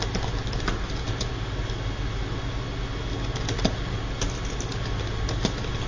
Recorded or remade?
recorded